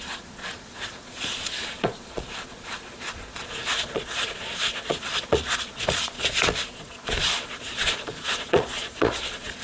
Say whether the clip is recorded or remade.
remade